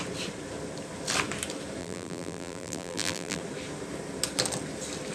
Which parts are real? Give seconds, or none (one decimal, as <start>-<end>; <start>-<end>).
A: 0.0-1.8; 3.4-5.1